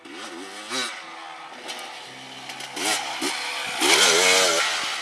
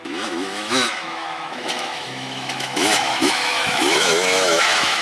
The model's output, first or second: second